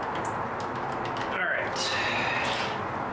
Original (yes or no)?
yes